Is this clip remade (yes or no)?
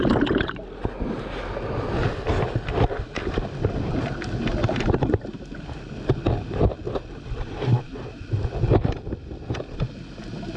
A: no